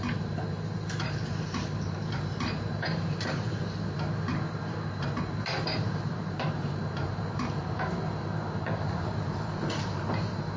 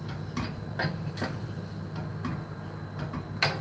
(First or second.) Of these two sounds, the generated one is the first